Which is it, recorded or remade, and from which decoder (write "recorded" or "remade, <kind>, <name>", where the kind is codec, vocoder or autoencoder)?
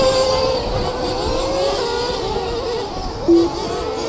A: recorded